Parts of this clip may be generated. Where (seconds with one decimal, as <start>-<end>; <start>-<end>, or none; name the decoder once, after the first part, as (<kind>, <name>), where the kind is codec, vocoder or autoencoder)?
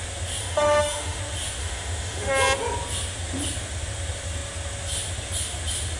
0.4-1.2 (autoencoder, DAC-VAE); 1.6-2.3